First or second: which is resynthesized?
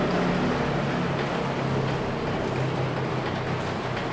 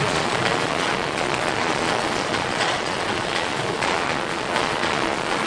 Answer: second